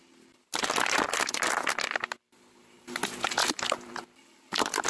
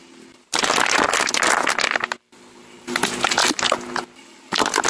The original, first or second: second